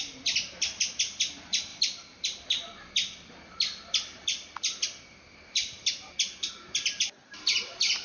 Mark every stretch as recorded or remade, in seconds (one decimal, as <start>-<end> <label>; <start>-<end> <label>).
0.0-8.0 recorded